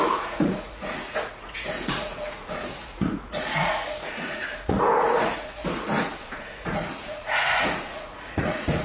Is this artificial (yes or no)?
yes